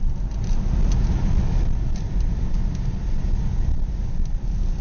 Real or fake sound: real